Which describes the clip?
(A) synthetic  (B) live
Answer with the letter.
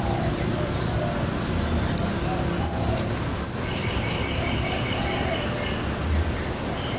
B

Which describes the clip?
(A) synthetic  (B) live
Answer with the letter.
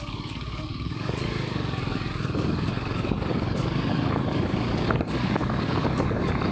A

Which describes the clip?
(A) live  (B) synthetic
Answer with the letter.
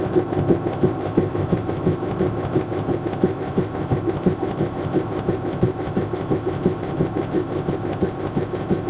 B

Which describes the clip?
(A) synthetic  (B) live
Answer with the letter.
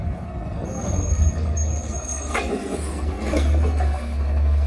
A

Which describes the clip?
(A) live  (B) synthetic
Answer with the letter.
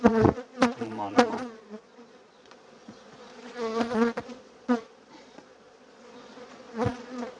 B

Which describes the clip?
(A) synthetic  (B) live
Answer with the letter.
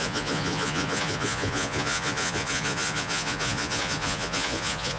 A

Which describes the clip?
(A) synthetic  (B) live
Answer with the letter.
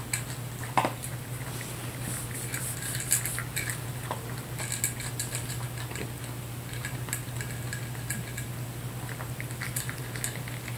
B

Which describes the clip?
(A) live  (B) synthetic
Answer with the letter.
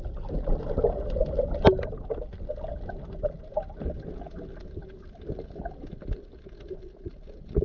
A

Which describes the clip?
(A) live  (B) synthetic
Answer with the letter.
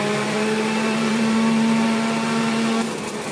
B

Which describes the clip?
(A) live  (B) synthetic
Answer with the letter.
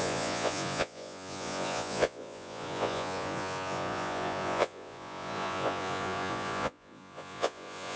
B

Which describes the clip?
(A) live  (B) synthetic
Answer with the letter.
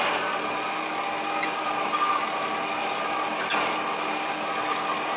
A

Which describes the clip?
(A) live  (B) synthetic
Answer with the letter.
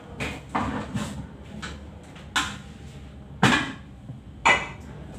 A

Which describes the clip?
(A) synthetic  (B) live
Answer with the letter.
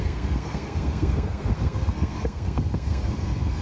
A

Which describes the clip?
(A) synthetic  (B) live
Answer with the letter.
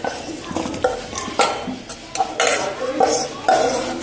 B